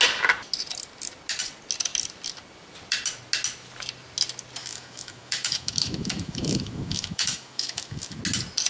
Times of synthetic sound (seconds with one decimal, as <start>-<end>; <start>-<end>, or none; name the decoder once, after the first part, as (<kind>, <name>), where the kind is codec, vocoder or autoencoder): 4.6-8.2 (autoencoder, DAC-VAE)